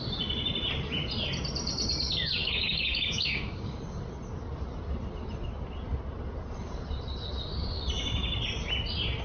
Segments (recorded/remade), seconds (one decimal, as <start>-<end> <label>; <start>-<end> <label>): 0.0-2.4 recorded; 2.4-3.8 remade; 3.8-9.2 recorded